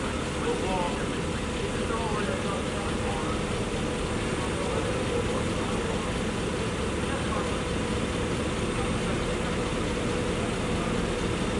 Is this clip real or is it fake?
real